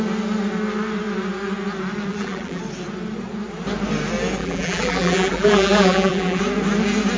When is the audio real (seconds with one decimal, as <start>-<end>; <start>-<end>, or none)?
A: 0.0-2.1; 2.6-4.4; 6.4-7.2